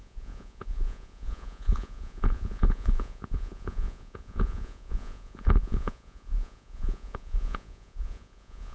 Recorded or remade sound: remade